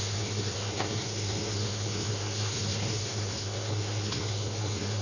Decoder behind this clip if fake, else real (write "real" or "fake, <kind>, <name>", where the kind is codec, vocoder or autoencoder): fake, codec, SNAC